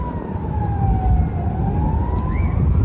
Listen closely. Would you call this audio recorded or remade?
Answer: recorded